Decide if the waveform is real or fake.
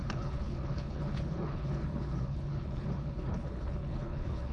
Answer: fake